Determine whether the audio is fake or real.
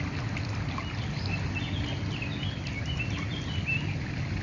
real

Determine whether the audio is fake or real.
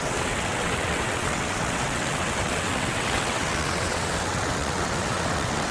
fake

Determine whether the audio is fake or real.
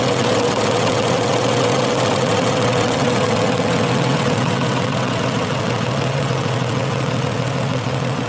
fake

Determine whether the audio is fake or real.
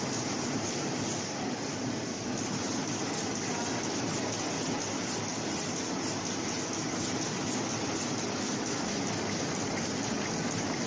real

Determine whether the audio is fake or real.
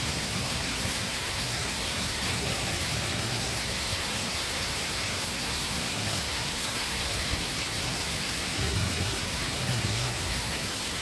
fake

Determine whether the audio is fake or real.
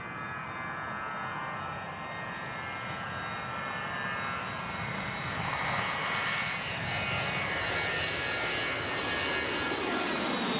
real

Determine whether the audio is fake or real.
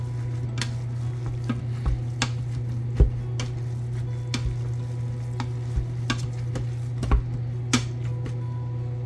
real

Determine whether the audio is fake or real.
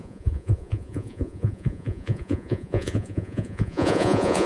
fake